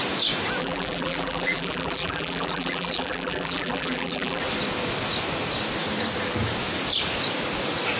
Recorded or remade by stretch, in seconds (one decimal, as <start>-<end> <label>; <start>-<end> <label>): 0.0-0.6 recorded; 0.6-4.4 remade; 4.4-8.0 recorded

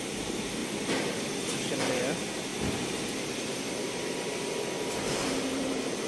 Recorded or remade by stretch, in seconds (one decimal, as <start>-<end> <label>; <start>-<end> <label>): 0.0-0.6 remade; 0.6-1.8 recorded; 1.8-2.5 remade; 2.5-5.1 recorded; 5.1-6.1 remade